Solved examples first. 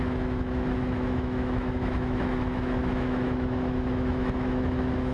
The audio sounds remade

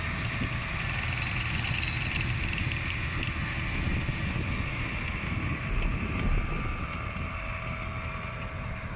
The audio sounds recorded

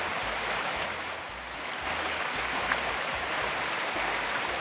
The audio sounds recorded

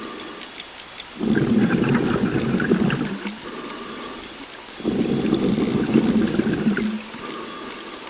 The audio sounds recorded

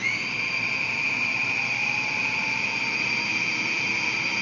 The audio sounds remade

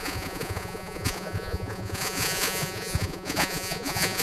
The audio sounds remade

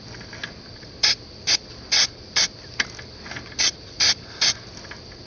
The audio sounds recorded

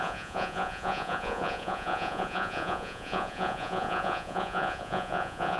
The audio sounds remade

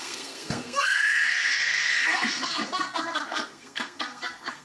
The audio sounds remade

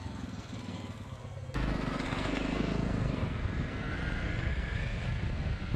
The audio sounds remade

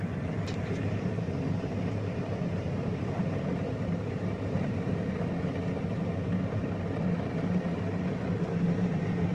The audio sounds remade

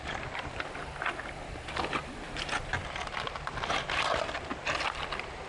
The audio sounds recorded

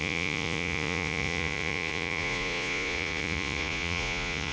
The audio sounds remade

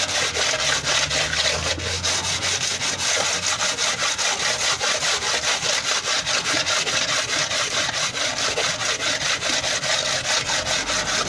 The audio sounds recorded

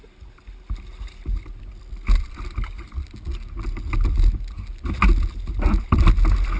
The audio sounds recorded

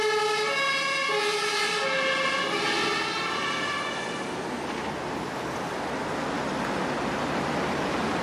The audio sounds recorded